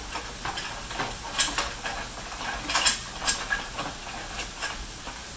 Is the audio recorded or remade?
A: recorded